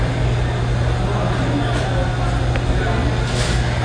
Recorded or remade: recorded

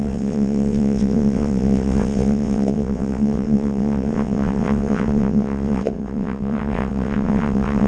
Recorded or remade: remade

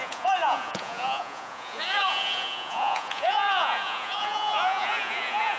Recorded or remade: remade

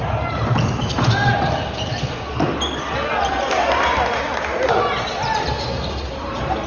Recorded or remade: recorded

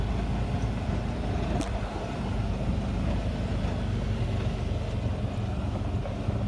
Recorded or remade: recorded